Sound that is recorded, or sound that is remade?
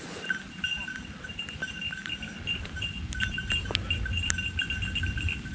recorded